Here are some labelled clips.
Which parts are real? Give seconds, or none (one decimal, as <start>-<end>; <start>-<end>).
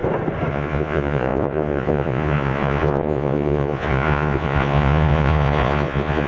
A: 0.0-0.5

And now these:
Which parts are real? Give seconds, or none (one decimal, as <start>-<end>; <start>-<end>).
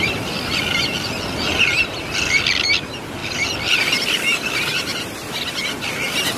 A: 0.0-6.4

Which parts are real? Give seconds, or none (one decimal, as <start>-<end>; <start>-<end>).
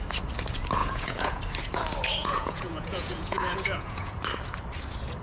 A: 0.0-0.8; 1.4-2.2; 4.1-5.2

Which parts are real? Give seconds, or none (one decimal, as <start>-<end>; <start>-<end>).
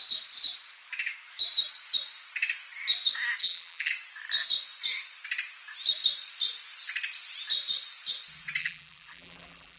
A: 0.0-3.4; 3.9-8.6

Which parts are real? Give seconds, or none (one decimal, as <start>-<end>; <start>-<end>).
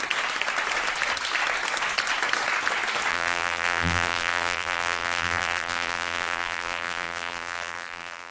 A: 0.0-3.1